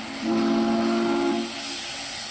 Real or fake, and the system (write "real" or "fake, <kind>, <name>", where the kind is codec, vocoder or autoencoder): real